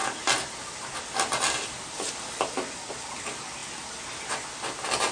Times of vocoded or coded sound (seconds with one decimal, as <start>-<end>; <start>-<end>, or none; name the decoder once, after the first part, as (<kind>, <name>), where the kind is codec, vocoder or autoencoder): none